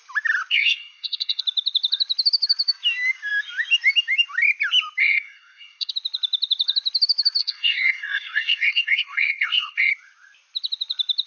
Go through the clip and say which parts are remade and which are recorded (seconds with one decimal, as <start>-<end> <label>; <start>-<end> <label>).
0.0-0.5 recorded; 0.5-1.4 remade; 1.4-5.0 recorded; 5.0-5.9 remade; 5.9-7.4 recorded; 7.4-9.9 remade; 9.9-11.3 recorded